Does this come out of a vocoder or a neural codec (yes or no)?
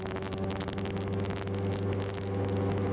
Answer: no